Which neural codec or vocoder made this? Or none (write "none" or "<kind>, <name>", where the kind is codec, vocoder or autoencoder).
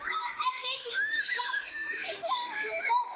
autoencoder, DAC-VAE